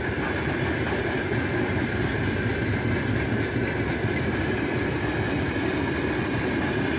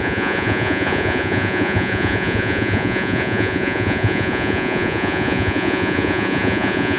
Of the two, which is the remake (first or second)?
second